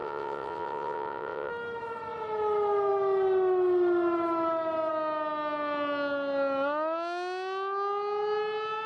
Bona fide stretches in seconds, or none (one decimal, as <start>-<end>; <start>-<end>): 1.5-8.9